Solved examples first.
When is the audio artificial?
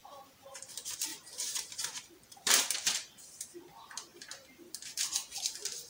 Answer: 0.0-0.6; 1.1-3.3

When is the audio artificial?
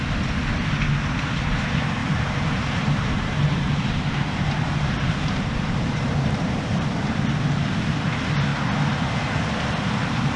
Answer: 2.0-7.1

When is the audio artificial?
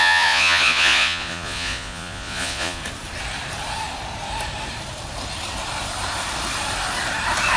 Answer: 0.0-2.8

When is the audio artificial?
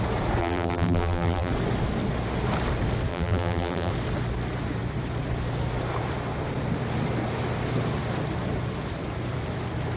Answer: 0.4-1.5; 3.1-3.9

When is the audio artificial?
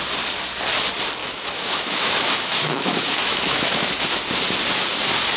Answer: 1.2-4.0